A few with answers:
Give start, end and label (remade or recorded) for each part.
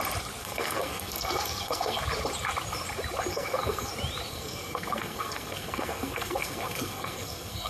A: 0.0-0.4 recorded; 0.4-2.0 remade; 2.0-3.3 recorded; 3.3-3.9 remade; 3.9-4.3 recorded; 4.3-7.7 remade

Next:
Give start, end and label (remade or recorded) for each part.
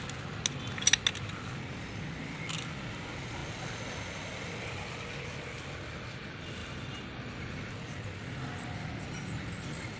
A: 0.0-10.0 recorded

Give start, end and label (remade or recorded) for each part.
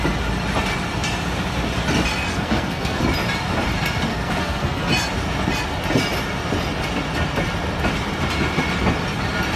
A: 0.0-2.3 recorded; 2.3-3.0 remade; 3.0-4.1 recorded; 4.1-4.9 remade; 4.9-9.6 recorded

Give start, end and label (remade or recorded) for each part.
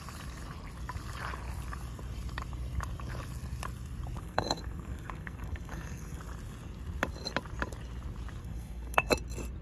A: 0.0-4.2 recorded; 4.2-6.2 remade; 6.2-8.4 recorded; 8.4-9.1 remade; 9.1-9.6 recorded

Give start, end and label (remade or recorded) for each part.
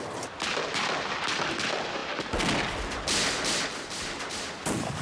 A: 0.0-5.0 recorded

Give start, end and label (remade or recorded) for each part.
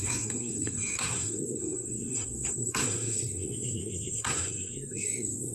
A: 0.0-5.5 remade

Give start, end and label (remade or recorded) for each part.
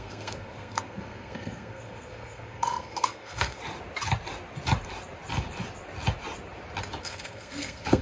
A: 0.0-3.6 remade; 3.6-7.0 recorded; 7.0-8.0 remade